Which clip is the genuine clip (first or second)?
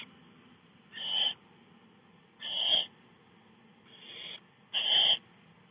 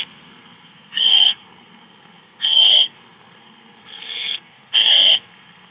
first